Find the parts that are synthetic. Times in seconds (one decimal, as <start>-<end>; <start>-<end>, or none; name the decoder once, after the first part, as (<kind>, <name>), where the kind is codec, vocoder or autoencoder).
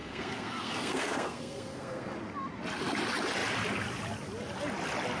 0.0-2.1 (codec, SNAC)